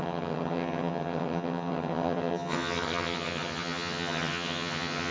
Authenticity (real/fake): fake